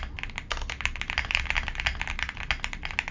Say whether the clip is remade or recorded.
recorded